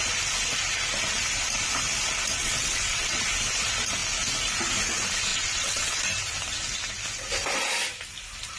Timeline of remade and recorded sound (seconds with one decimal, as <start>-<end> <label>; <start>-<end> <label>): 0.0-2.4 recorded; 2.4-3.2 remade; 3.2-5.3 recorded; 5.3-6.0 remade; 6.0-8.6 recorded